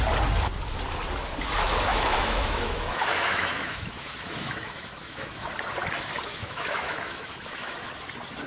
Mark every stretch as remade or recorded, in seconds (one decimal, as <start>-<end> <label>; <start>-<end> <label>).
0.0-1.9 recorded; 1.9-5.5 remade; 5.5-6.3 recorded; 6.3-7.9 remade; 7.9-8.5 recorded